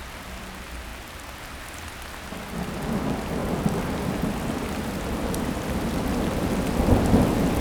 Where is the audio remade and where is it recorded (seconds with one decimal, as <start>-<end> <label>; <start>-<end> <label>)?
0.0-7.6 recorded